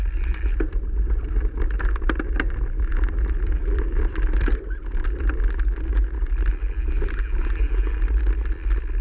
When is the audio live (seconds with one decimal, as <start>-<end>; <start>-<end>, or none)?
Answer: 0.0-9.0